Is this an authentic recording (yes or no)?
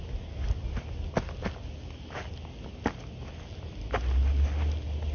yes